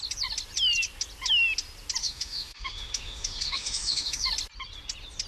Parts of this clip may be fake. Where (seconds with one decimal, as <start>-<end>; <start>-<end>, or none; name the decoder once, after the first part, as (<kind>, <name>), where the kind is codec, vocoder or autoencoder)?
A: 2.0-4.3 (autoencoder, DAC-VAE)